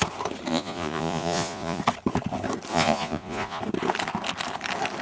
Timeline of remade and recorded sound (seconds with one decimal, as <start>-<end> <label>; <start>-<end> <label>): 0.0-0.5 recorded; 0.5-1.8 remade; 1.8-2.7 recorded; 2.7-3.6 remade; 3.6-5.0 recorded